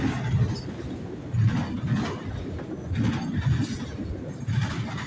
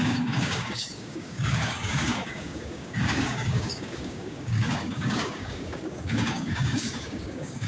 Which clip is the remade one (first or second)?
second